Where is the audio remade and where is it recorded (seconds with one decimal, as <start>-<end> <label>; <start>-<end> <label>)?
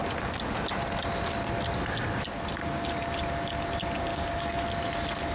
0.0-4.1 recorded; 4.1-4.6 remade; 4.6-5.3 recorded